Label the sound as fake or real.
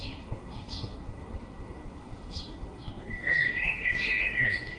fake